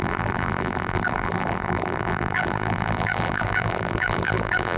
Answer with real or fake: fake